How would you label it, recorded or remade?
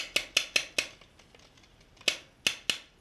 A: recorded